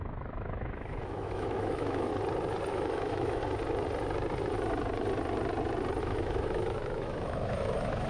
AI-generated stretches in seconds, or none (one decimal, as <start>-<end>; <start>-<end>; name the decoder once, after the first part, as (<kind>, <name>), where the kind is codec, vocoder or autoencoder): 0.0-2.1 (autoencoder, DAC-VAE); 2.7-3.4; 6.0-8.1